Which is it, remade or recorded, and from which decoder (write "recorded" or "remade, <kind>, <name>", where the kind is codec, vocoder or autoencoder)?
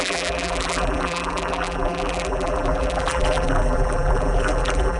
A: remade, vocoder, BigVGAN v2